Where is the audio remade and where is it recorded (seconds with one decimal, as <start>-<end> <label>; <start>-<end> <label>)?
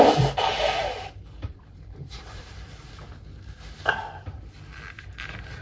0.0-0.8 recorded; 0.8-2.5 remade; 2.5-5.6 recorded